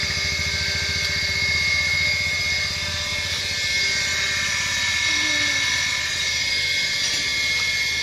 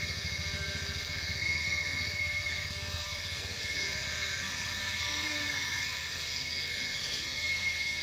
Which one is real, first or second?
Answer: first